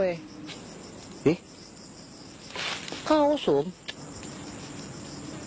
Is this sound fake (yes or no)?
no